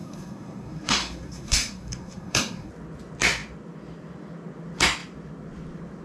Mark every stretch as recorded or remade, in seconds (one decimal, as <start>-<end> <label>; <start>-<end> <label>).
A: 0.0-2.7 remade; 2.7-6.0 recorded